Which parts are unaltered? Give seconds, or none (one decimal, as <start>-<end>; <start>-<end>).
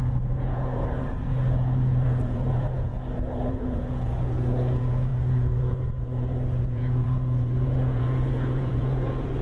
2.9-3.5